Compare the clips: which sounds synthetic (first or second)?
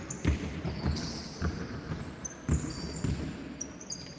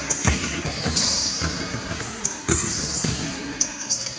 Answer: second